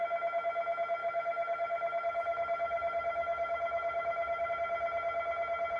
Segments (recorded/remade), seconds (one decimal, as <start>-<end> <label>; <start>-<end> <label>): 0.0-1.0 recorded; 1.0-4.5 remade; 4.5-5.8 recorded